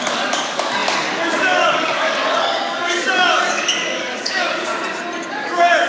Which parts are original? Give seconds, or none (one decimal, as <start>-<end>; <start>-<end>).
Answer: 4.7-5.4